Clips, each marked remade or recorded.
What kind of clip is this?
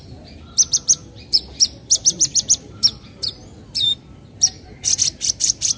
remade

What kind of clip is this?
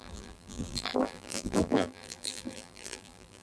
remade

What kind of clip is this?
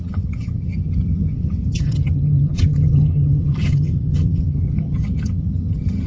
remade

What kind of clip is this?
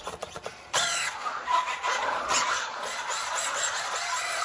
remade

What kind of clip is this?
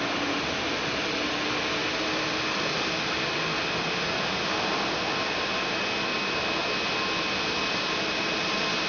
recorded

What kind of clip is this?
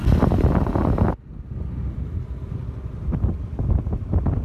recorded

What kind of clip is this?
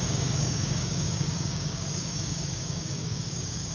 remade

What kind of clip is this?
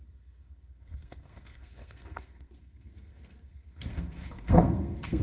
remade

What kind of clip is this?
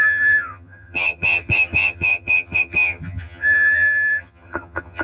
remade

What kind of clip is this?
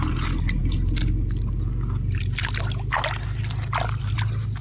recorded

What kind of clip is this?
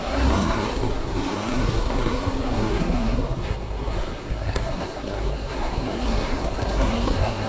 remade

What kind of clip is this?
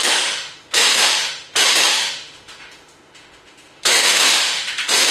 remade